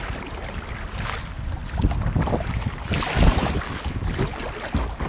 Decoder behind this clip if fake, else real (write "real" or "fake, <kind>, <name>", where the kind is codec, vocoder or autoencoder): real